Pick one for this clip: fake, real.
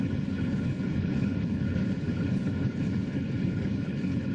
fake